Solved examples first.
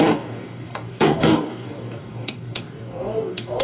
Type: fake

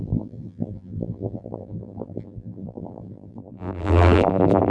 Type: fake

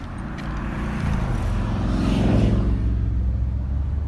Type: real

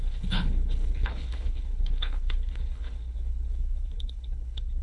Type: fake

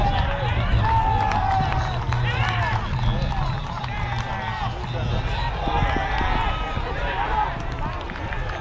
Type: real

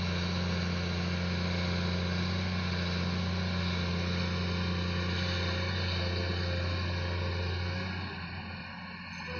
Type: real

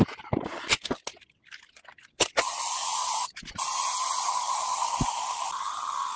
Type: real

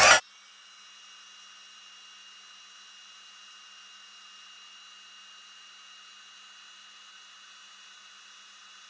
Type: real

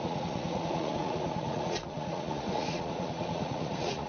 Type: fake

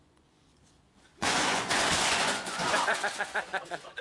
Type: fake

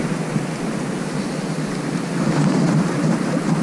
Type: real